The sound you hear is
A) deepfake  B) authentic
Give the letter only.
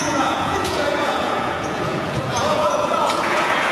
A